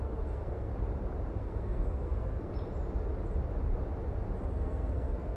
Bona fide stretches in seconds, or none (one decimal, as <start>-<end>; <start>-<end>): 0.7-1.3; 2.5-4.5